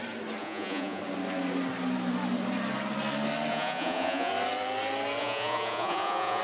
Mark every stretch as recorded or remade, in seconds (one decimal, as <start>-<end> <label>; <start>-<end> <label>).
0.0-0.4 recorded; 0.4-1.0 remade; 1.0-3.5 recorded; 3.5-4.3 remade; 4.3-5.2 recorded; 5.2-6.4 remade